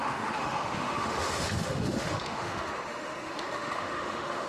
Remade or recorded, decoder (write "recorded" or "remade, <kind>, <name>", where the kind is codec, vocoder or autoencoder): remade, autoencoder, DAC-VAE